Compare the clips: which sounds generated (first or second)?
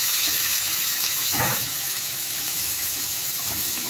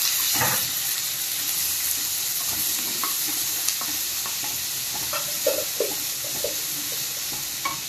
first